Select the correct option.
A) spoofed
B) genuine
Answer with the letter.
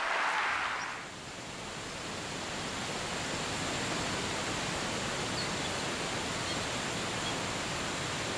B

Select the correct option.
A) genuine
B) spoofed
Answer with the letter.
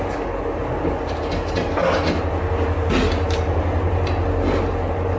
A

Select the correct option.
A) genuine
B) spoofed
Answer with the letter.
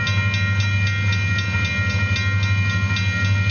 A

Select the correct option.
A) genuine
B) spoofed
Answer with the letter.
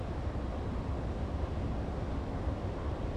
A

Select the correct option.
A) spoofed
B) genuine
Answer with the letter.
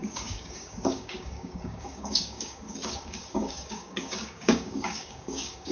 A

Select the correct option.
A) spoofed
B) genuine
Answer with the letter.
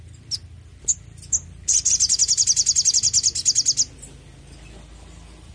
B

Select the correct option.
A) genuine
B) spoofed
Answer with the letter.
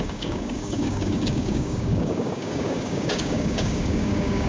B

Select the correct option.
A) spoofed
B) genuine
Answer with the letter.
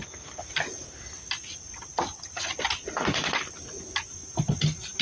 B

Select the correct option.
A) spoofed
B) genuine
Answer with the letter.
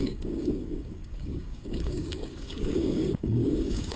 A